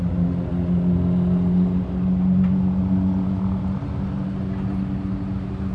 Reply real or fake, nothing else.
real